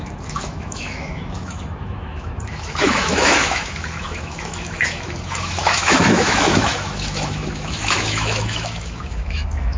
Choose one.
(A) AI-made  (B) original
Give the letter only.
A